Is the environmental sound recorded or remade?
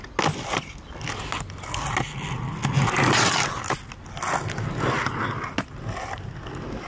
recorded